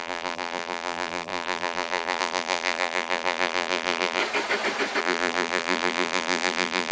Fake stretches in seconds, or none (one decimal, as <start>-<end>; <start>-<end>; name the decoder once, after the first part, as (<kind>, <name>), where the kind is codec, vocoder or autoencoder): 0.0-4.2 (vocoder, BigVGAN v2); 5.0-6.9